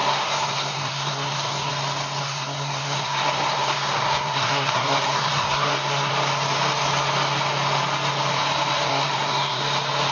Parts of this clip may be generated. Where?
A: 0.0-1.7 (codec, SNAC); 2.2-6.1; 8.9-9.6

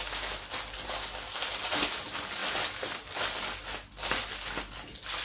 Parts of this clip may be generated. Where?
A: none

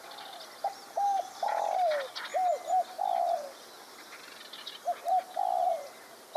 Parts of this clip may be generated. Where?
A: none

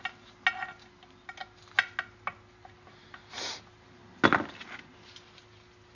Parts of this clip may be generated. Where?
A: none

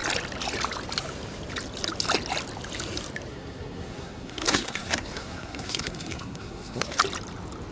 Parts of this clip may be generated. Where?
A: 3.3-7.0 (codec, SNAC)